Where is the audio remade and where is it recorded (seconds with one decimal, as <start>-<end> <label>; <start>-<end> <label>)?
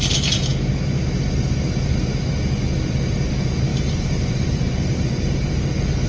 0.0-3.7 recorded; 3.7-5.6 remade; 5.6-6.1 recorded